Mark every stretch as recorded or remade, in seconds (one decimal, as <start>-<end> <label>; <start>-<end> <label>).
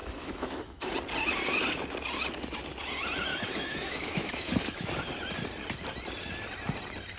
0.0-0.9 remade; 0.9-3.3 recorded; 3.3-5.1 remade; 5.1-7.2 recorded